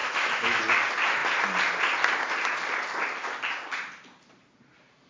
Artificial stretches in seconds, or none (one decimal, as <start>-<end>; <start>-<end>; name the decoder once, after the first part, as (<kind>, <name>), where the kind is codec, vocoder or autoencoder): 0.0-0.6 (autoencoder, DAC-VAE)